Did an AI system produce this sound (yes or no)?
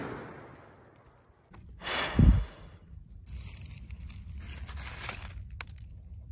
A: no